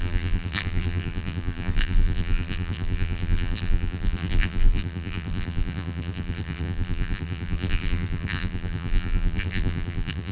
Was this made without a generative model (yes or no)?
no